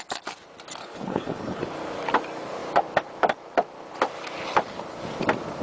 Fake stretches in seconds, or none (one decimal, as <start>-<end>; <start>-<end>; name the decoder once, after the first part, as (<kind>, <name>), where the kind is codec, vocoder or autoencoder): 0.8-1.6 (codec, HILCodec)

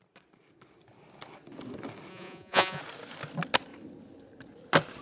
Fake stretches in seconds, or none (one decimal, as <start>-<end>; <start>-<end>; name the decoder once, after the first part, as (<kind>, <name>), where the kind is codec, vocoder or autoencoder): 2.1-2.8 (vocoder, Vocos)